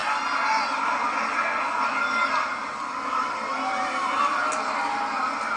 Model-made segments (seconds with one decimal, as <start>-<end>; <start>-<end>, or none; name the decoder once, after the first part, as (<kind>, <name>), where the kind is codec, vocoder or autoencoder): none